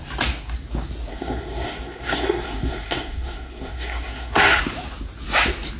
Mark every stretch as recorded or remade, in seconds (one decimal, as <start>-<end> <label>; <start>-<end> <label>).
0.0-1.1 recorded; 1.1-4.6 remade; 4.6-5.8 recorded